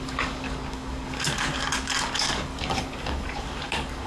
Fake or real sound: fake